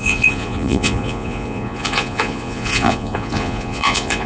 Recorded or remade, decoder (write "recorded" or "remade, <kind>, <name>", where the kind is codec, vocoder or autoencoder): remade, vocoder, Vocos